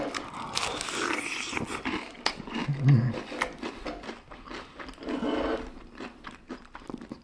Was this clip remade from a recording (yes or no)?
no